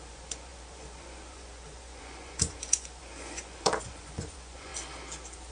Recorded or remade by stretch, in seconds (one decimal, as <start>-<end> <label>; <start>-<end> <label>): 0.0-4.7 remade; 4.7-5.5 recorded

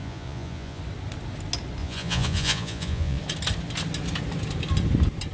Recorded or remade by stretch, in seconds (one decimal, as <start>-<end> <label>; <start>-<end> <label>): 0.0-0.8 remade; 0.8-1.8 recorded; 1.8-3.2 remade; 3.2-5.3 recorded